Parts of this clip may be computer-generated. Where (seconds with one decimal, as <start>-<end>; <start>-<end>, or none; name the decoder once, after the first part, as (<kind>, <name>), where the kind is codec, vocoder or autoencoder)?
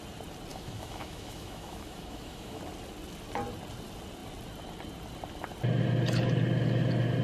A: 0.5-2.6 (autoencoder, DAC-VAE)